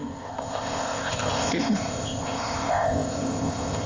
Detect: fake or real fake